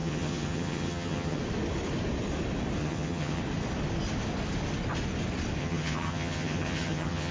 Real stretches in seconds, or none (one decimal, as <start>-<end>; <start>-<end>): 1.4-2.8; 3.4-5.6